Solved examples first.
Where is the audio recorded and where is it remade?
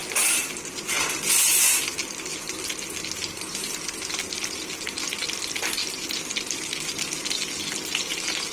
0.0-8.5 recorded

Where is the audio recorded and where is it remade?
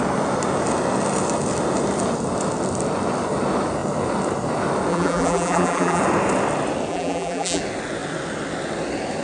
0.0-4.9 recorded; 4.9-6.0 remade; 6.0-6.9 recorded; 6.9-7.6 remade; 7.6-9.2 recorded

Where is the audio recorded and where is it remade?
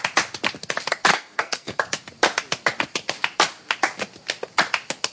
0.0-1.1 recorded; 1.1-1.8 remade; 1.8-5.1 recorded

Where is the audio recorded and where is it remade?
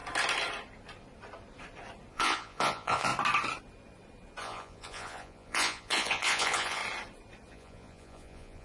0.0-2.1 recorded; 2.1-3.1 remade; 3.1-4.4 recorded; 4.4-6.8 remade; 6.8-7.5 recorded; 7.5-8.6 remade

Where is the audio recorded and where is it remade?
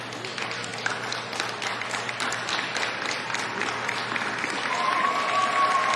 0.0-6.0 recorded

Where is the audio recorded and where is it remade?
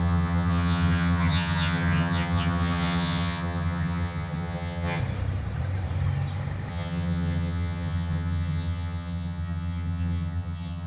0.0-5.0 remade; 5.0-6.7 recorded; 6.7-10.9 remade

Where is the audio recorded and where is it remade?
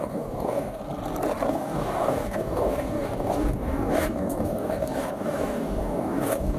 0.0-0.8 remade; 0.8-1.5 recorded; 1.5-6.6 remade